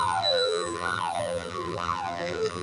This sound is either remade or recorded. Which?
remade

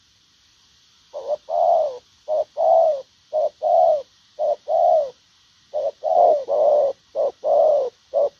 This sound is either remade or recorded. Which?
remade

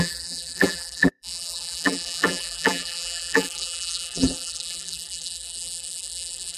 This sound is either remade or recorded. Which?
remade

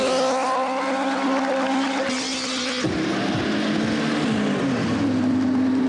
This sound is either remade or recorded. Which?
recorded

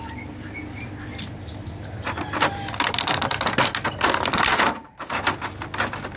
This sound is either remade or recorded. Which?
recorded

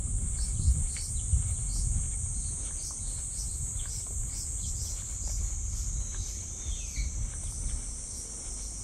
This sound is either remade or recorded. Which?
recorded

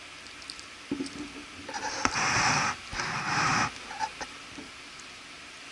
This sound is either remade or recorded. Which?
recorded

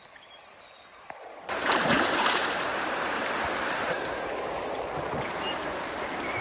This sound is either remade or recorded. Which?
remade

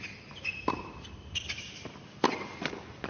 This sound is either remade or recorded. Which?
recorded